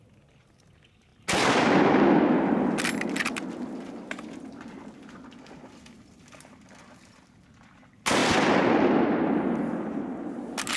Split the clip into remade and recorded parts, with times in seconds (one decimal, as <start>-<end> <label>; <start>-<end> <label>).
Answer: 0.0-10.8 recorded